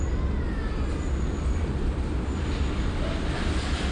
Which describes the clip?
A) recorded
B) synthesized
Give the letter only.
A